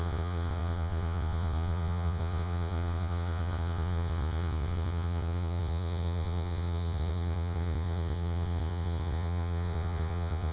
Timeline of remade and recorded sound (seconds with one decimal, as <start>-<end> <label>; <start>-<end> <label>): 0.0-10.5 remade